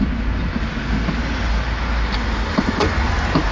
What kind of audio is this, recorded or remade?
recorded